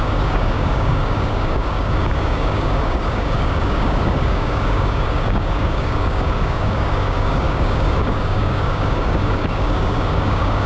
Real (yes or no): no